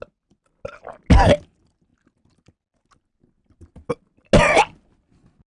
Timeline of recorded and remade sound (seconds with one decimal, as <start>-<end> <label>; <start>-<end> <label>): 0.0-5.5 recorded